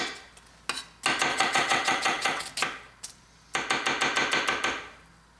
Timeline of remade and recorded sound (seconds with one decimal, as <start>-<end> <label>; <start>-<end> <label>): 0.0-1.3 recorded; 1.3-2.4 remade; 2.4-5.4 recorded